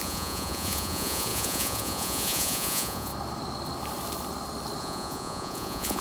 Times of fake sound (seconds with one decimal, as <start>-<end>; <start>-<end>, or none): 0.0-3.1; 4.8-6.0